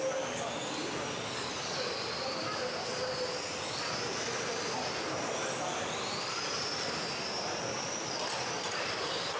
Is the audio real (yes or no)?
yes